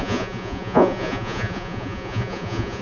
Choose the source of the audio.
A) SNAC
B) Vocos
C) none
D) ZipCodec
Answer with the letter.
B